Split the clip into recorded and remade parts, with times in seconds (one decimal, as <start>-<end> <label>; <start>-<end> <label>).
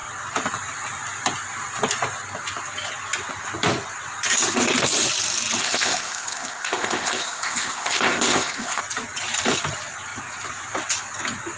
0.0-5.6 recorded; 5.6-8.8 remade; 8.8-11.6 recorded